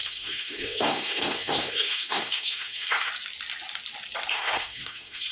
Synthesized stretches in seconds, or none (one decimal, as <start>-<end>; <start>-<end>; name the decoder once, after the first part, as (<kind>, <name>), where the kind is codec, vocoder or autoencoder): 0.0-3.1 (codec, SNAC); 4.3-5.3

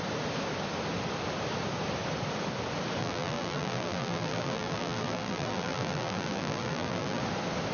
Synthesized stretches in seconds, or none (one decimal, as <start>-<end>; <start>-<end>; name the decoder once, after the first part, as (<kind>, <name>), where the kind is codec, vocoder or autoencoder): 3.0-7.2 (vocoder, BigVGAN v2)

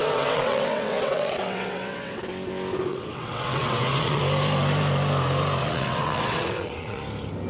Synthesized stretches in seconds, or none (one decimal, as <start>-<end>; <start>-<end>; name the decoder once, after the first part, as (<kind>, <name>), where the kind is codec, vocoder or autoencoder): 0.0-2.2 (vocoder, WaveNeXt); 2.9-4.2; 5.6-7.0

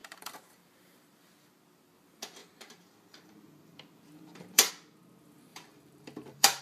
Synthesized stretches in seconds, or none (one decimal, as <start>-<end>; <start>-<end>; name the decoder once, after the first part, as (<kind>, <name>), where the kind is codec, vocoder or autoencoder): 0.0-1.6 (vocoder, BigVGAN v2); 2.4-4.7; 5.5-6.6

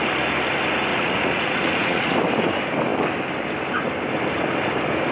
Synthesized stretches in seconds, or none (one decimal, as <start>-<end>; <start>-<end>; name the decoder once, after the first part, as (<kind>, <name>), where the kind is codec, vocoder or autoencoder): 0.9-2.1 (vocoder, Vocos)

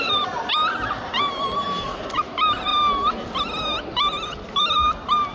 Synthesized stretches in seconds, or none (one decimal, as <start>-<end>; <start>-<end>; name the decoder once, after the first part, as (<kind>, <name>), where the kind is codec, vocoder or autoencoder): 0.0-2.7 (vocoder, BigVGAN v2); 3.8-5.3